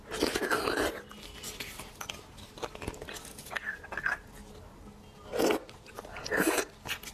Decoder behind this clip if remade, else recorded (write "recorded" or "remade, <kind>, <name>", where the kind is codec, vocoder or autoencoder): recorded